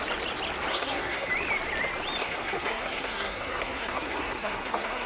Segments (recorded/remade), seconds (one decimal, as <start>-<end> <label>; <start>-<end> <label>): 0.0-0.7 recorded; 0.7-1.3 remade; 1.3-2.2 recorded; 2.2-5.1 remade